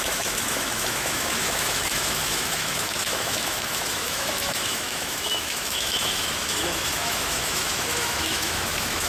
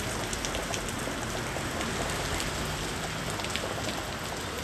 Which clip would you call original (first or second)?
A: second